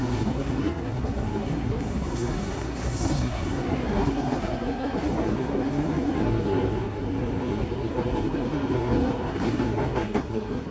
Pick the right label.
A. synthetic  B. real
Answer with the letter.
A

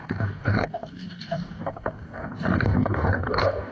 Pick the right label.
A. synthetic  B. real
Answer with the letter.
A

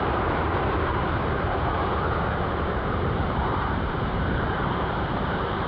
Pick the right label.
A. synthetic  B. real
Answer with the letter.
A